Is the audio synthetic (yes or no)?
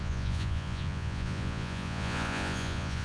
yes